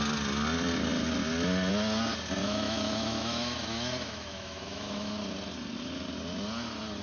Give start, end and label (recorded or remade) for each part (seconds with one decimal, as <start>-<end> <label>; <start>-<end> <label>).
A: 0.0-2.4 recorded; 2.4-5.1 remade; 5.1-7.0 recorded